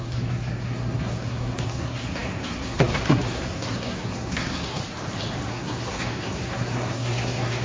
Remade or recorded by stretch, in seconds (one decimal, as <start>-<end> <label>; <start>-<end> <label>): 0.0-4.8 remade; 4.8-5.5 recorded; 5.5-7.6 remade